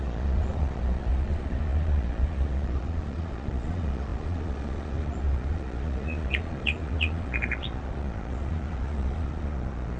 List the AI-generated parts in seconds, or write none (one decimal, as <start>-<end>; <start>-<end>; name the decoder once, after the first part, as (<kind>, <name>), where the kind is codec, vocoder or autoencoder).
0.0-10.0 (vocoder, Vocos)